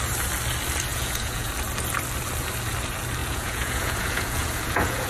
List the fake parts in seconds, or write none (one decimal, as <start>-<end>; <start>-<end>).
0.9-1.5; 3.2-5.1